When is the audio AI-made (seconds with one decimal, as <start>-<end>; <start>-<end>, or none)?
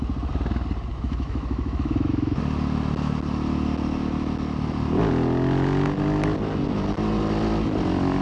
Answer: 0.9-2.4